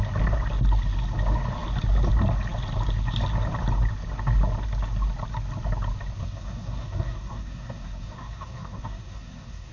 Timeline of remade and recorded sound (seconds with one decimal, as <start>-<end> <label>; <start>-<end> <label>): 0.0-6.2 recorded; 6.2-9.7 remade